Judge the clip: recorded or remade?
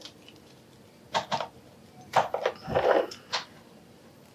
remade